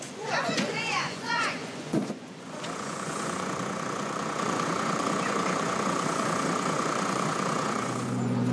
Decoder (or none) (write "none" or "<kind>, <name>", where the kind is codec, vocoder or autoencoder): vocoder, Vocos